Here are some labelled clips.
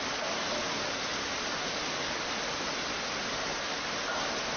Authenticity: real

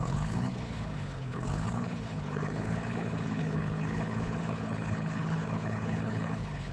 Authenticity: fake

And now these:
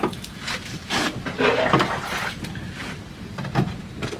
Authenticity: real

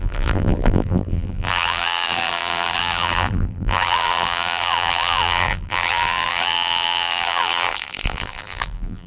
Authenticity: fake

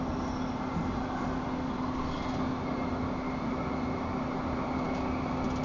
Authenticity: real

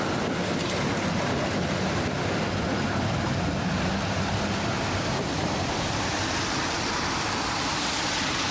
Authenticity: real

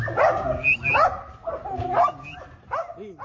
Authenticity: real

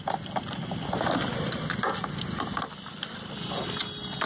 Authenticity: real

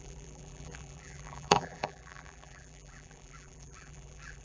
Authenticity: fake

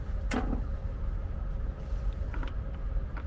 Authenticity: real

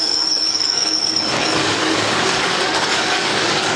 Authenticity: fake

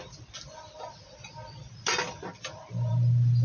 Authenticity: real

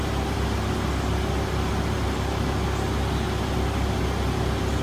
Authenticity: real